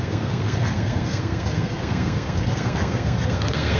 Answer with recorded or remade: remade